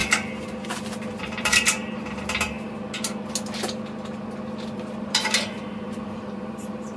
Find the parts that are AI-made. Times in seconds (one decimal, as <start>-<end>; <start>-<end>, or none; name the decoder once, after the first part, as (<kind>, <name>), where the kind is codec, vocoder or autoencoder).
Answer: 1.2-1.8 (vocoder, BigVGAN v2); 5.0-7.0